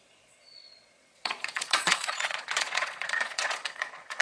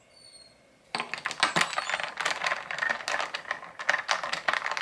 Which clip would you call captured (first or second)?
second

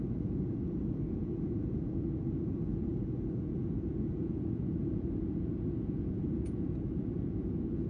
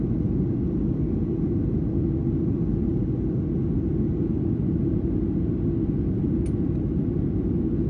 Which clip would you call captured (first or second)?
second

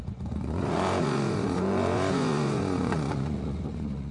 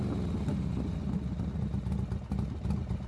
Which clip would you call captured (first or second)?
second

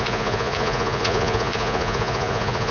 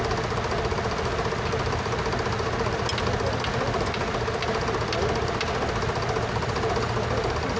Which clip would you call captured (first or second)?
second